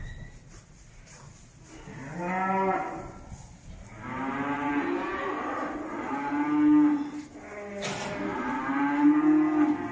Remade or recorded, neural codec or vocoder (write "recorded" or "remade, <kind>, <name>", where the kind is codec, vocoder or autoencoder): recorded